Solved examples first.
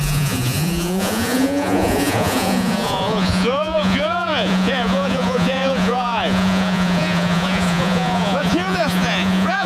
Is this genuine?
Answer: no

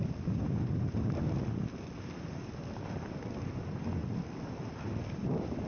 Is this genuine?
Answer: yes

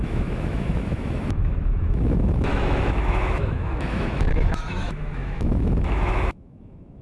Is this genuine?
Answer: no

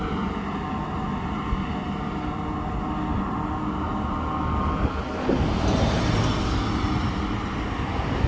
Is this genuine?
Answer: yes